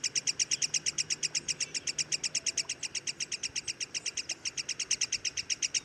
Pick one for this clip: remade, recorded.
recorded